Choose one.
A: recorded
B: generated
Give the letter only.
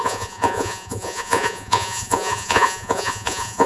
B